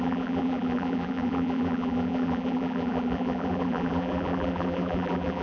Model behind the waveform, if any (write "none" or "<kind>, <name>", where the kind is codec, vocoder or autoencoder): vocoder, BigVGAN v2